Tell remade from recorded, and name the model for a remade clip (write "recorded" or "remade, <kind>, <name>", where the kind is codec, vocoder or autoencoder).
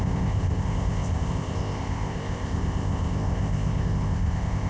remade, codec, ZipCodec